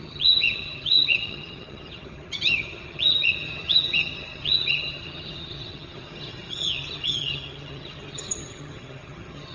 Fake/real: fake